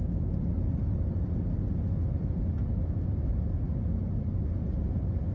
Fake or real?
real